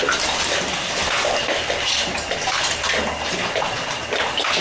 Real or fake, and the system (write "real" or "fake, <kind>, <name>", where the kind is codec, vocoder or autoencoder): real